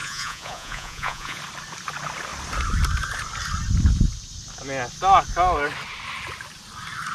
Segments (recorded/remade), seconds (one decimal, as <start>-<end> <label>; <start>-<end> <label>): 0.0-1.4 remade; 1.4-7.1 recorded